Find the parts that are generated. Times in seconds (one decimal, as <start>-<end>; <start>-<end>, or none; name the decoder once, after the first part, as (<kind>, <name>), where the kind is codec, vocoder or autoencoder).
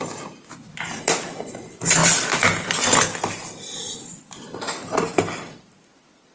none